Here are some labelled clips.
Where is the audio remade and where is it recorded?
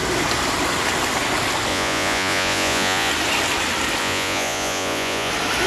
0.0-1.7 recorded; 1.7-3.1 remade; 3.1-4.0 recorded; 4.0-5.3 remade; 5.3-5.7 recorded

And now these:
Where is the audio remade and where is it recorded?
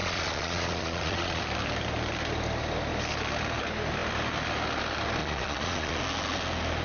0.0-1.4 remade; 1.4-5.2 recorded; 5.2-6.0 remade; 6.0-6.8 recorded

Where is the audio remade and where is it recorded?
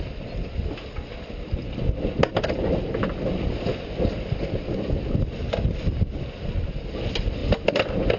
0.0-8.2 recorded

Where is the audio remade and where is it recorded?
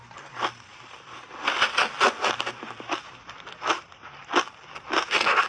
0.0-5.5 recorded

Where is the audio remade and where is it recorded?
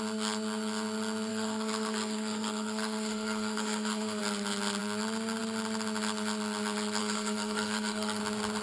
0.0-1.3 recorded; 1.3-4.2 remade; 4.2-7.0 recorded; 7.0-8.2 remade; 8.2-8.6 recorded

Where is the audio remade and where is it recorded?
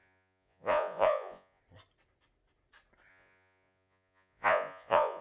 0.0-1.6 remade; 1.6-3.1 recorded; 3.1-5.2 remade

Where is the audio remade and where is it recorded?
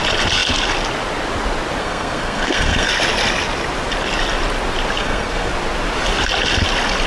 0.0-1.8 recorded; 1.8-2.9 remade; 2.9-5.0 recorded; 5.0-5.5 remade; 5.5-7.1 recorded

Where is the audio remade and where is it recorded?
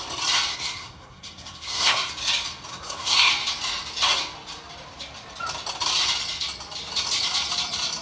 0.0-0.5 recorded; 0.5-2.1 remade; 2.1-2.7 recorded; 2.7-3.3 remade; 3.3-8.0 recorded